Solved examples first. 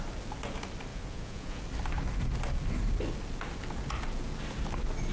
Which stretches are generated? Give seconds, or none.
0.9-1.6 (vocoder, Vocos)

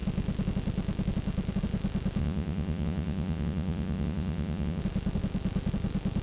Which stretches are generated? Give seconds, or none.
2.2-4.8 (vocoder, Vocos)

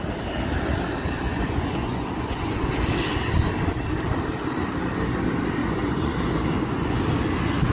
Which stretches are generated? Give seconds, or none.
1.3-2.7 (vocoder, Vocos); 5.6-7.0

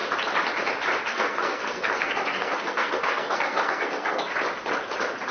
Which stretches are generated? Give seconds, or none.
1.1-4.3 (codec, SNAC)

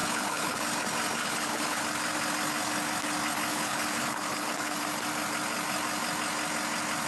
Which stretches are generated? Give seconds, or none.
0.0-0.6 (codec, HILCodec); 1.2-1.8; 3.5-4.8

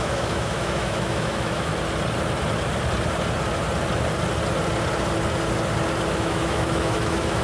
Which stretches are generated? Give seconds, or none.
0.0-1.7 (autoencoder, DAC-VAE); 6.1-7.4

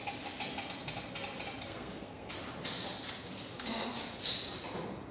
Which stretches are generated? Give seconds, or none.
1.7-2.3 (codec, SNAC); 3.4-4.0

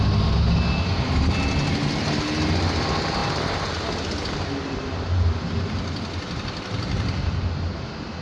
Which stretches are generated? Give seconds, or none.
none